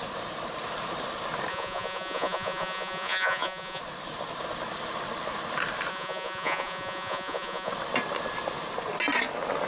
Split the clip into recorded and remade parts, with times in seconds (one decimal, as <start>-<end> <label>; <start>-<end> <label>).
0.0-1.5 recorded; 1.5-3.8 remade; 3.8-5.9 recorded; 5.9-7.7 remade; 7.7-9.7 recorded